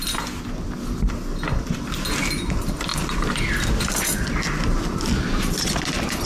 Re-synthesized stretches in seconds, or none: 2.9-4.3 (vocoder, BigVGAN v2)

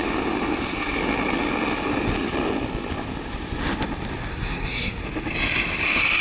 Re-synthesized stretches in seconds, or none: 4.3-5.0 (codec, SNAC)

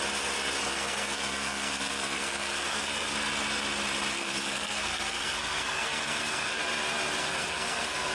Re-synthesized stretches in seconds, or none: 0.6-3.1 (codec, SNAC); 4.1-6.6; 7.2-8.1

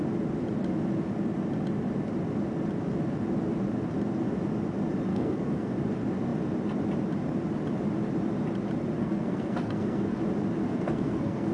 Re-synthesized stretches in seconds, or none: 5.1-5.7 (codec, SNAC); 9.0-10.2; 10.6-11.5

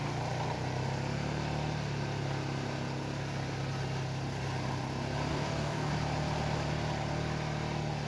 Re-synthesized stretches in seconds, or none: 5.3-5.9 (codec, DAC)

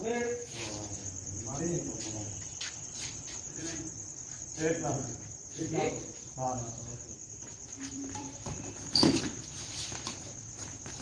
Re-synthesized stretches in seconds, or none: 0.0-1.0 (vocoder, BigVGAN v2); 1.6-11.0

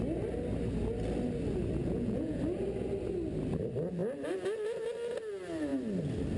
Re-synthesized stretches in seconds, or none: 1.8-2.4 (vocoder, Vocos)

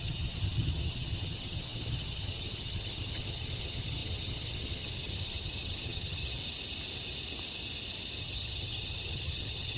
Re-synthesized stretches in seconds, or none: 0.0-6.4 (vocoder, HiFi-GAN); 8.2-9.8